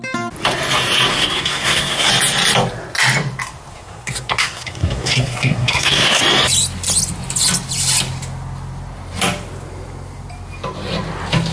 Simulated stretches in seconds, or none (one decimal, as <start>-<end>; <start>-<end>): 1.1-2.1; 3.7-6.2